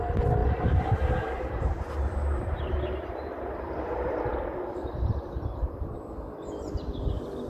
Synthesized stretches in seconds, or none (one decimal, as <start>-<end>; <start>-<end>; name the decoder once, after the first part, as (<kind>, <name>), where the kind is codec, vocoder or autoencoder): 0.4-4.2 (vocoder, BigVGAN v2); 4.8-6.0